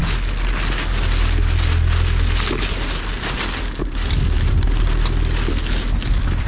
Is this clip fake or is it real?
real